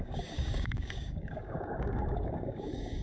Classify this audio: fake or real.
fake